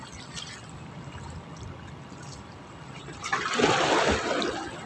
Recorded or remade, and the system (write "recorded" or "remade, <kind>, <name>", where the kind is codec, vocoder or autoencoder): recorded